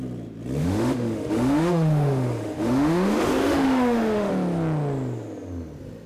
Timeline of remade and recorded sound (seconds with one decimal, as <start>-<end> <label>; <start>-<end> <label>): 0.0-0.6 recorded; 0.6-4.3 remade; 4.3-6.1 recorded